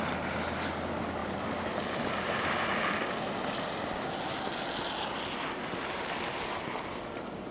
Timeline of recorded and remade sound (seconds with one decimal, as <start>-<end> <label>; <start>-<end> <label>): 0.0-7.5 recorded